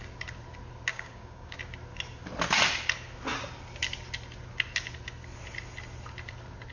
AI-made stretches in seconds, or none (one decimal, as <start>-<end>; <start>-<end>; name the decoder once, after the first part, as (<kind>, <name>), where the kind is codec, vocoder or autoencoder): 0.9-1.6 (codec, DAC)